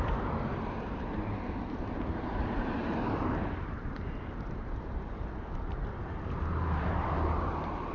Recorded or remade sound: remade